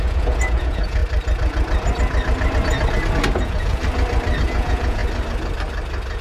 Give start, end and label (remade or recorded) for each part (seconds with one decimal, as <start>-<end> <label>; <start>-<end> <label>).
0.0-1.0 remade; 1.0-3.3 recorded; 3.3-3.8 remade; 3.8-4.4 recorded; 4.4-5.0 remade; 5.0-6.2 recorded